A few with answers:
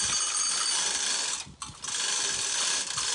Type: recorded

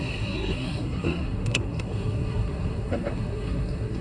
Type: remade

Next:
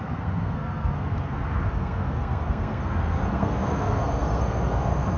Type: remade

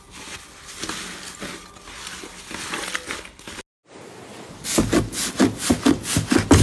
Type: recorded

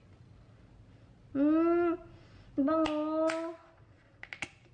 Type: recorded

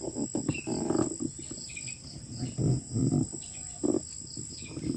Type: recorded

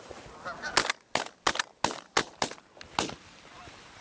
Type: recorded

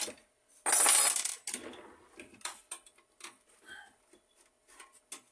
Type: recorded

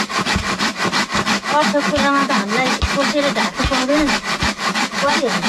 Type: recorded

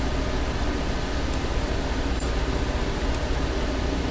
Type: recorded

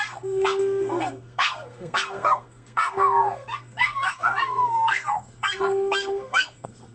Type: remade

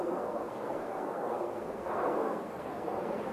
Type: remade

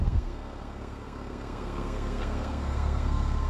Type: remade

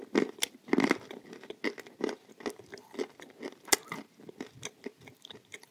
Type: recorded